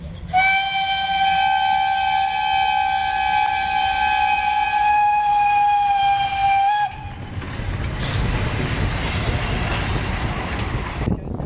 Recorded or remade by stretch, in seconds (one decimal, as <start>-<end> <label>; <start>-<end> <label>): 0.0-11.5 recorded